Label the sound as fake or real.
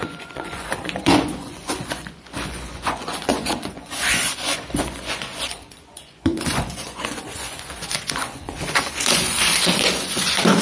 fake